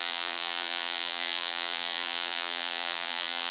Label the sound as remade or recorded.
remade